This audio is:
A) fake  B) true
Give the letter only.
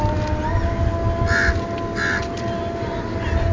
B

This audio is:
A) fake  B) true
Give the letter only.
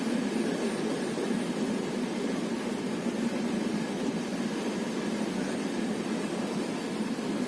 B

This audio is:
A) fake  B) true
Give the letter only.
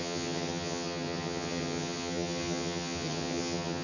A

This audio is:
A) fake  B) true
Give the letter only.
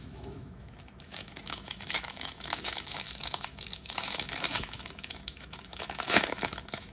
A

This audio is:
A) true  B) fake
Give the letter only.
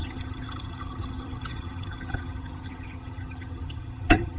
B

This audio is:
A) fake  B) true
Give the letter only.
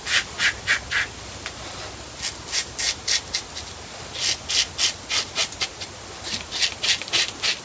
B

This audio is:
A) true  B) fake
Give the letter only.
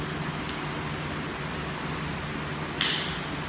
A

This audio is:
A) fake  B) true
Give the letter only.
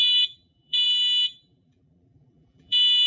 A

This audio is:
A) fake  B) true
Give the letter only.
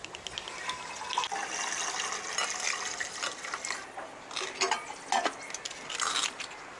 B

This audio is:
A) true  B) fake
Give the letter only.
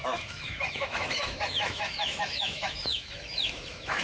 B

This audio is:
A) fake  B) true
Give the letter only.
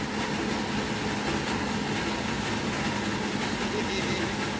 B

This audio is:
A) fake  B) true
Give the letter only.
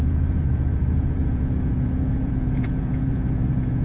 A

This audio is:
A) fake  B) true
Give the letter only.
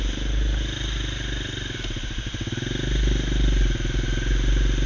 B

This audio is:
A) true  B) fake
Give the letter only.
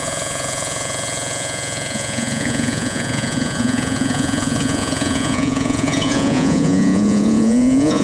B